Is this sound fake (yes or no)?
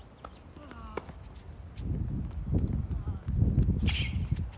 no